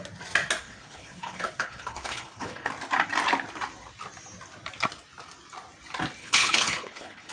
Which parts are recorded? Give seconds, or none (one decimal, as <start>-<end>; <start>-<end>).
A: 0.0-0.6; 2.7-6.2